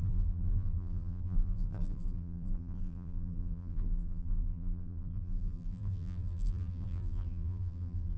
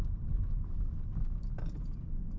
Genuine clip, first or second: second